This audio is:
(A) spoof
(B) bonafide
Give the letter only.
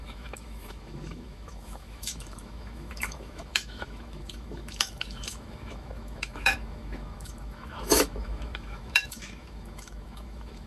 A